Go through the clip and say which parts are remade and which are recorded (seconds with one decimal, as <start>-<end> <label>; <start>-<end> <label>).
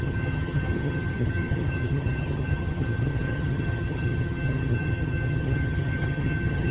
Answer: 0.0-6.7 remade